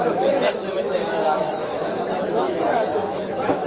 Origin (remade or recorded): remade